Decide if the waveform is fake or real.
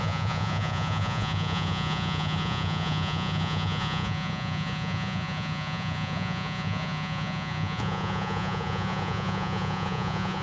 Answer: fake